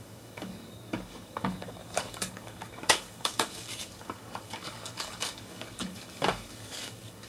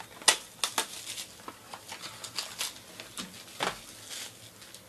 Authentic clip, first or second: second